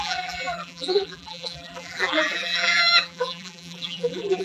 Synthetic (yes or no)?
yes